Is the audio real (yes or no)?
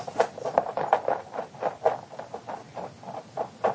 yes